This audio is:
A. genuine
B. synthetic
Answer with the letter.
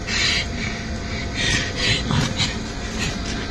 A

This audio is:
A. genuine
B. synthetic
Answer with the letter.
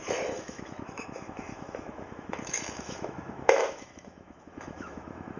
B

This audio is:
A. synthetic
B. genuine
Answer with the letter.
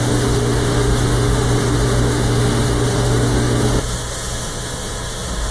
A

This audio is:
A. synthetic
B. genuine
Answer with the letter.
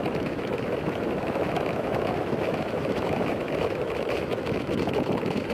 A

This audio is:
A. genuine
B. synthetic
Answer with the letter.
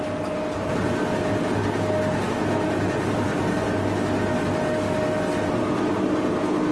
A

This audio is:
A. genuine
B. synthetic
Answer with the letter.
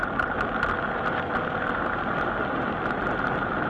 A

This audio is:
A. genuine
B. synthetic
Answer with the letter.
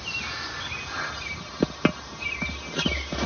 A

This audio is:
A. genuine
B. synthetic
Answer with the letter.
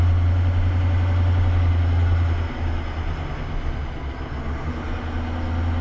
A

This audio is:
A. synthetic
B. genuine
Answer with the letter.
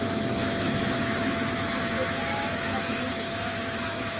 A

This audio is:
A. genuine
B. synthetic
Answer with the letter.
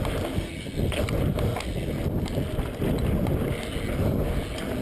A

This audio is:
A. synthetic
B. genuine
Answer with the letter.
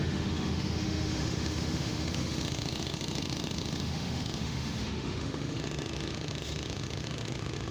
A